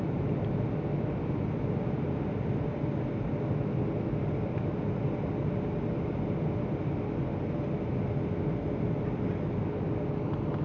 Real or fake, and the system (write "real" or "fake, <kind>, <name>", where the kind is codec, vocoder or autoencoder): real